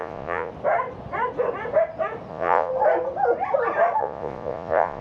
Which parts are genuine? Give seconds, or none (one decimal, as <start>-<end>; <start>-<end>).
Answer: 0.5-2.3; 2.7-4.0